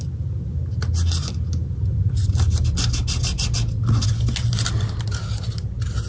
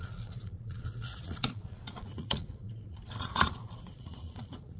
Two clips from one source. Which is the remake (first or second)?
second